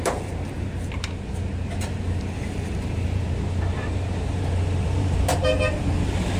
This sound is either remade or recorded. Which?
remade